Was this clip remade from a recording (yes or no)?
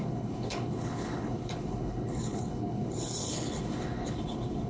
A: yes